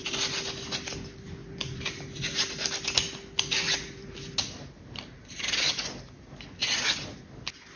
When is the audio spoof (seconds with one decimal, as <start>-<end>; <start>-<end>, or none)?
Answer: none